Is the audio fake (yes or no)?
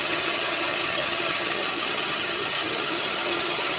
yes